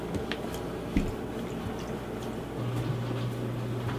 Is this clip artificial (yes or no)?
no